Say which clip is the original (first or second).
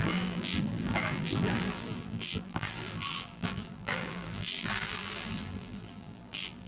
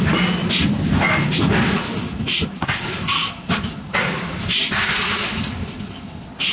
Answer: second